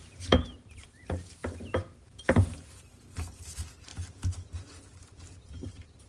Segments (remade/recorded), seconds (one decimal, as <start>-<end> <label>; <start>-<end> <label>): 0.0-3.9 remade; 3.9-4.9 recorded; 4.9-6.1 remade